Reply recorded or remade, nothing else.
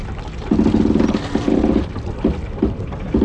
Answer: recorded